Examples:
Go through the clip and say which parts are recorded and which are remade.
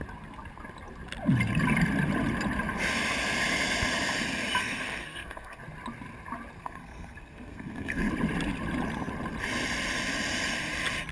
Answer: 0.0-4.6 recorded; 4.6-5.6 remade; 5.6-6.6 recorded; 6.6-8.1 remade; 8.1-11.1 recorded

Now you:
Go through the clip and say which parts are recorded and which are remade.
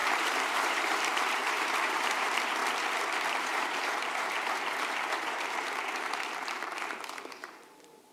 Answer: 0.0-2.6 remade; 2.6-3.4 recorded; 3.4-8.1 remade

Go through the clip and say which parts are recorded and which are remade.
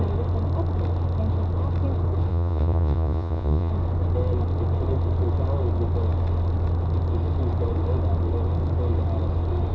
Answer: 0.0-2.3 recorded; 2.3-3.7 remade; 3.7-9.7 recorded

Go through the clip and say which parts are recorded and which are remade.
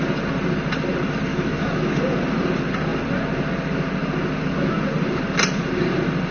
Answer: 0.0-1.3 recorded; 1.3-2.0 remade; 2.0-6.3 recorded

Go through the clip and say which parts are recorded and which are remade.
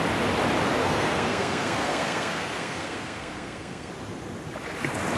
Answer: 0.0-0.8 recorded; 0.8-3.9 remade; 3.9-5.2 recorded